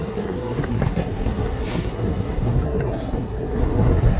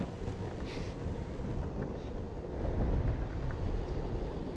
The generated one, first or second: first